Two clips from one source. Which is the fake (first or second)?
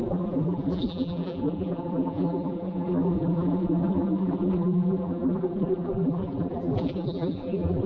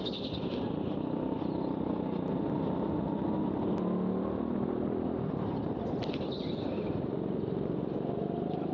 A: first